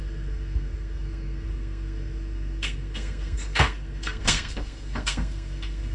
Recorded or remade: remade